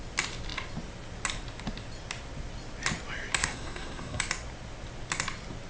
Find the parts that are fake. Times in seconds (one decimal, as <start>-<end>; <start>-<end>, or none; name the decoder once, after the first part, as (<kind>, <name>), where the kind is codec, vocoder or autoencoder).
3.4-4.2 (codec, SNAC)